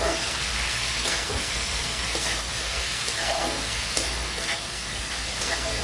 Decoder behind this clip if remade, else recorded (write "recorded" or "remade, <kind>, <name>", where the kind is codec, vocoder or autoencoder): remade, codec, SNAC